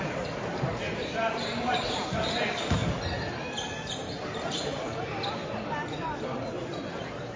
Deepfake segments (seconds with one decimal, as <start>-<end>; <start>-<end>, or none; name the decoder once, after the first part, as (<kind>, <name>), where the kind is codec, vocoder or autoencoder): 0.0-2.8 (vocoder, BigVGAN v2); 4.2-5.4; 6.2-7.4